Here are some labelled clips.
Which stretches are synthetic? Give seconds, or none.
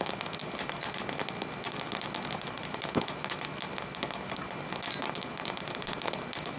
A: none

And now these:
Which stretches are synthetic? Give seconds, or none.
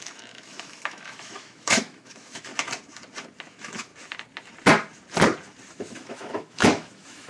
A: 0.0-2.5 (autoencoder, DAC-VAE); 3.5-3.9; 5.7-7.3